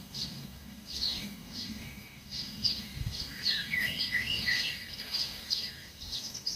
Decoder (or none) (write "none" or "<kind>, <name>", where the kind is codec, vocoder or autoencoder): codec, DAC